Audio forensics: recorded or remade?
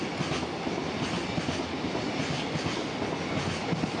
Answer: recorded